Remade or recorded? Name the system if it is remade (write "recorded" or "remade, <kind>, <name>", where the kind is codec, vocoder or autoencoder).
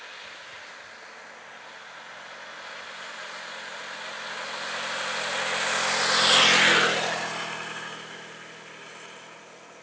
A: recorded